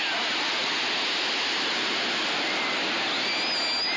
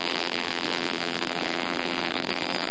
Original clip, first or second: first